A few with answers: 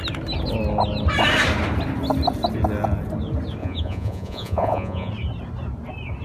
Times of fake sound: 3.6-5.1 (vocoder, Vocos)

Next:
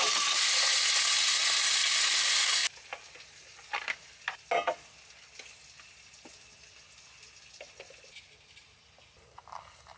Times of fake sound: none

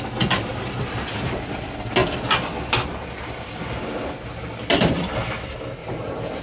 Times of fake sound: 0.5-1.6 (vocoder, BigVGAN v2); 5.8-6.4

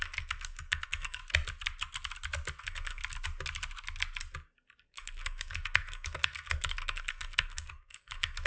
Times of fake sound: 0.0-1.2 (codec, SNAC); 2.6-3.0; 4.9-8.5

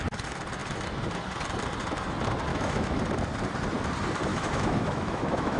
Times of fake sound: 2.5-3.0 (autoencoder, DAC-VAE); 4.3-5.6

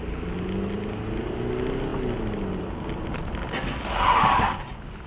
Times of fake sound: none

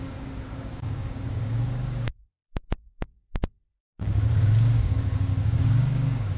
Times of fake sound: 0.0-2.3 (codec, DAC); 2.8-6.4